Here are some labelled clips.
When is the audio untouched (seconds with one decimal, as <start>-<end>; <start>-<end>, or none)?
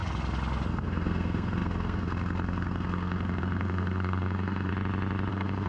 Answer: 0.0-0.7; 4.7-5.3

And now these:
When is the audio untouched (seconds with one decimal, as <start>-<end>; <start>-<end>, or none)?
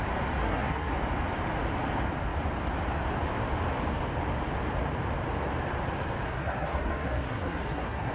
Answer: 0.0-0.4; 0.9-6.3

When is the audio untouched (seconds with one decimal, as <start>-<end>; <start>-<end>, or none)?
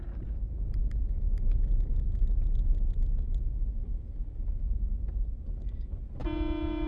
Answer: 0.0-6.9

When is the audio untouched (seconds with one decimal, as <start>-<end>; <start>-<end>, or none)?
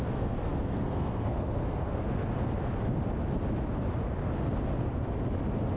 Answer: 2.2-5.8